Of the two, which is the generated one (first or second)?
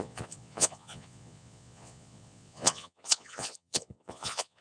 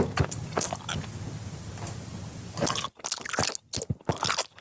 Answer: first